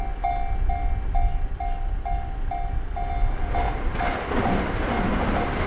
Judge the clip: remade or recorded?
recorded